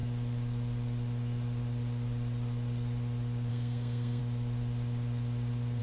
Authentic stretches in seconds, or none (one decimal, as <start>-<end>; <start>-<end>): 0.0-3.5; 4.2-5.8